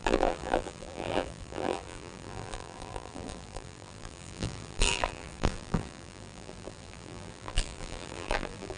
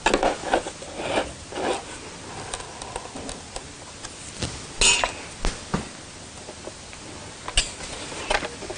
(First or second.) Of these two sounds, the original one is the second